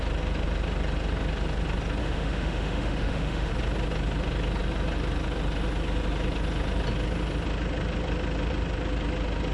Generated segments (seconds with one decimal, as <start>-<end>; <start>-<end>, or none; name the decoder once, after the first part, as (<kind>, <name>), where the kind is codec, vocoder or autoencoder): 2.0-3.5 (autoencoder, DAC-VAE)